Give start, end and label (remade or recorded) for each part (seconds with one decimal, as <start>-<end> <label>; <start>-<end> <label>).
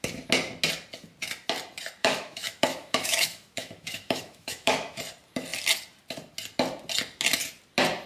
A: 0.0-2.0 recorded; 2.0-5.0 remade; 5.0-8.1 recorded